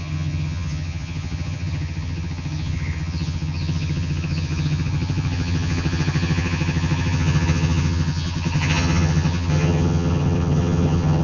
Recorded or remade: remade